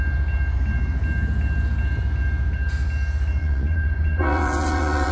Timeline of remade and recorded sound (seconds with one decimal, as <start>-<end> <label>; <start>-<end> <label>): 0.0-3.4 recorded; 3.4-5.1 remade